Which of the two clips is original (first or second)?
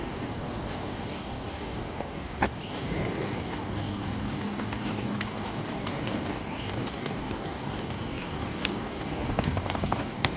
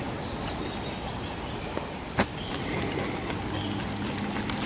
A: second